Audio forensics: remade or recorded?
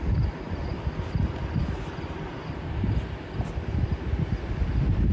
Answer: recorded